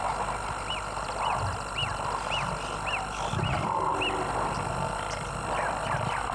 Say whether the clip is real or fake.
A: real